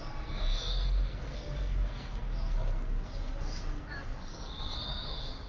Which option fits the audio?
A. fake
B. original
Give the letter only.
A